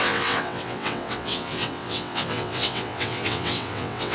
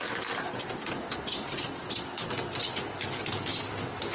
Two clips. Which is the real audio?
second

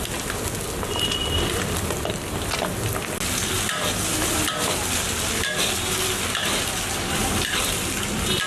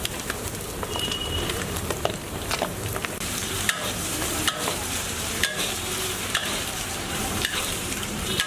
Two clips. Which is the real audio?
first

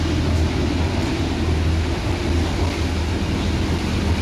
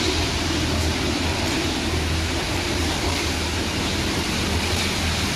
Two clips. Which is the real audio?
first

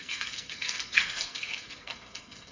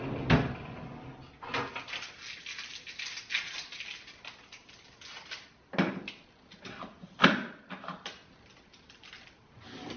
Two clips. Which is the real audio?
second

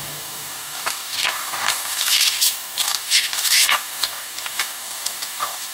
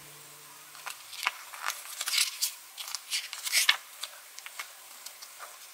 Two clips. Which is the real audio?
second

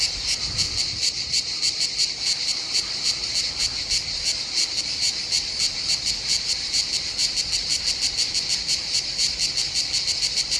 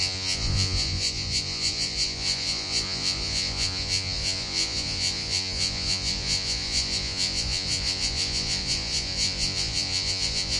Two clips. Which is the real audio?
first